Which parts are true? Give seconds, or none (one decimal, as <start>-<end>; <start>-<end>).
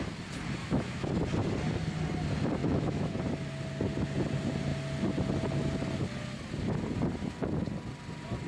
0.0-0.6; 1.1-2.6; 3.1-8.5